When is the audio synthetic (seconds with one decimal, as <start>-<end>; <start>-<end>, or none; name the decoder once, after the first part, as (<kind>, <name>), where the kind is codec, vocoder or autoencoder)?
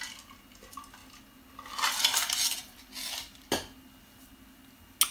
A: none